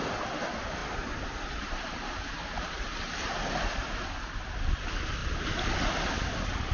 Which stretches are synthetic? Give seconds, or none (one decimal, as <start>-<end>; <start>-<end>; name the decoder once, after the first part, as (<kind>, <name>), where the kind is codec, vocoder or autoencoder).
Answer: 0.8-4.8 (vocoder, BigVGAN v2)